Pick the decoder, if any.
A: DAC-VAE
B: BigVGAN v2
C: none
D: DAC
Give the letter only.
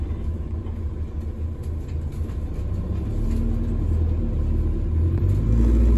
C